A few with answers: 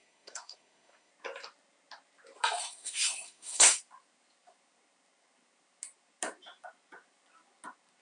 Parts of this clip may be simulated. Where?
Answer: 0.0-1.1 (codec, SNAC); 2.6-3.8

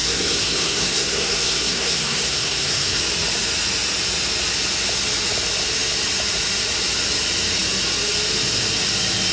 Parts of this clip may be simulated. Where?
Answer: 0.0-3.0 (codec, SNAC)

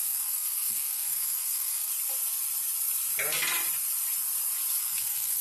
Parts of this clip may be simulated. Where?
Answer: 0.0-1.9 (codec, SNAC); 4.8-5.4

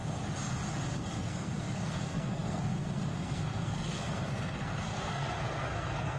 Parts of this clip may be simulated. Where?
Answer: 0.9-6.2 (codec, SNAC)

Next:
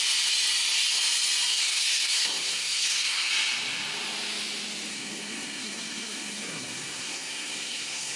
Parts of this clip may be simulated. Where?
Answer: 1.5-3.3 (codec, SNAC); 4.9-8.2

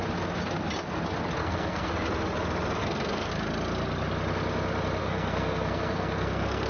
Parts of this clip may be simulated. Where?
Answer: 1.4-1.9 (codec, SNAC); 2.8-3.3; 5.0-6.7